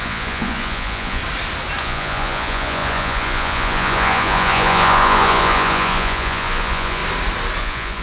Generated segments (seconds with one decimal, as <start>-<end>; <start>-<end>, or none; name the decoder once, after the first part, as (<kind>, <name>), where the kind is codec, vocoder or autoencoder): 0.0-1.2 (vocoder, Vocos); 1.8-7.0; 7.6-8.0